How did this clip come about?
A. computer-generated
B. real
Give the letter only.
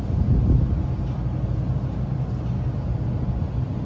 B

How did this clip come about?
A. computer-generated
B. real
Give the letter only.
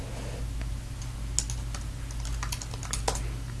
B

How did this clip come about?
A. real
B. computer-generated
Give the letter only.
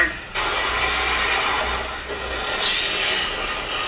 A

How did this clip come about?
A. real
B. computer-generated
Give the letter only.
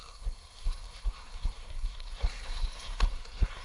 B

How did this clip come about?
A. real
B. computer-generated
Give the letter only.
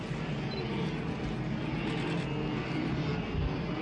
A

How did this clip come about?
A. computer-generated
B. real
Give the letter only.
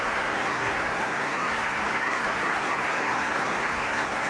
A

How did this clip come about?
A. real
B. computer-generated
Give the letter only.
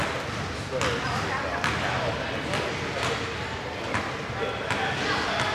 A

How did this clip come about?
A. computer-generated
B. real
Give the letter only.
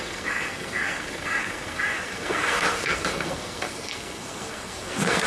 A